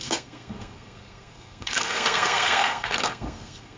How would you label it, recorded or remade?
remade